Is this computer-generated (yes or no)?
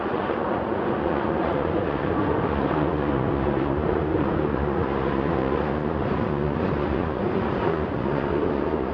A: yes